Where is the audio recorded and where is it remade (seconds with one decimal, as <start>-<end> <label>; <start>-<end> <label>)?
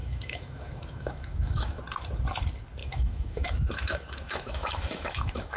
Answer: 0.0-1.8 remade; 1.8-2.8 recorded; 2.8-5.6 remade